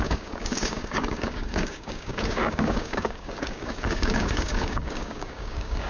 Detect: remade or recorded remade